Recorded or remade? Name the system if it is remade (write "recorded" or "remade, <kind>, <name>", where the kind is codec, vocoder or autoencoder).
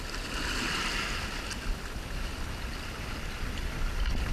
recorded